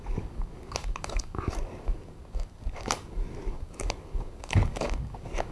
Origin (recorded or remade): remade